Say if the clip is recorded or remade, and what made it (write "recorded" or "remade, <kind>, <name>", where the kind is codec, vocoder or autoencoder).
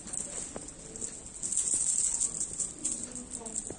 recorded